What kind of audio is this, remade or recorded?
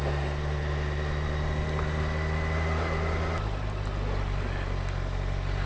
recorded